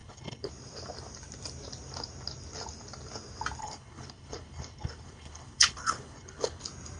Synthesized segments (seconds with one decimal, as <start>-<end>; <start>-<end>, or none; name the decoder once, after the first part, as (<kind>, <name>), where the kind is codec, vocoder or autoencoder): 0.0-0.5 (codec, HILCodec); 3.6-6.6